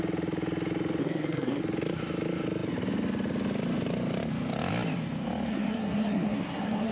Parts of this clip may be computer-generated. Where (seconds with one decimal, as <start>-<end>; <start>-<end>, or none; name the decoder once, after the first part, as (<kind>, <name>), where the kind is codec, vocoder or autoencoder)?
1.0-1.6 (codec, SNAC); 5.5-6.9